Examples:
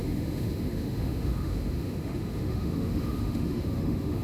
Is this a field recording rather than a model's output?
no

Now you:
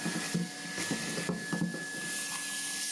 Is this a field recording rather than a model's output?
yes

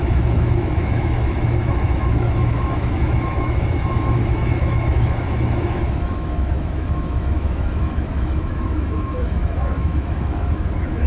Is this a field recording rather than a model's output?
no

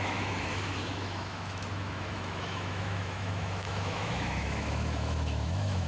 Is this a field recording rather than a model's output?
no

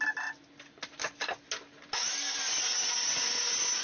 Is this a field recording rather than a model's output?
yes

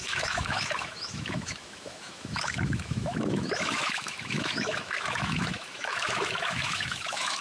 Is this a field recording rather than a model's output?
no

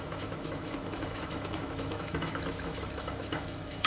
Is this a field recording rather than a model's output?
no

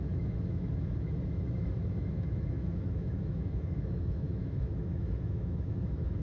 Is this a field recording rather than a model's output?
no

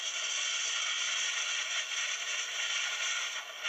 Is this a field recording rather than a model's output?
yes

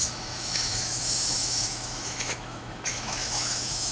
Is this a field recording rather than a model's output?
no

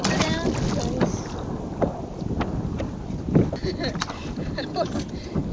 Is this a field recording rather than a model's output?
yes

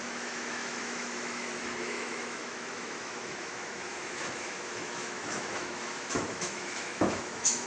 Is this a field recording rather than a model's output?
no